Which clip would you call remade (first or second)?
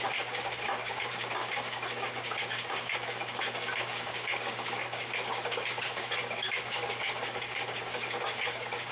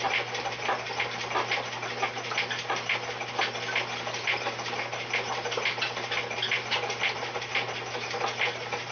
first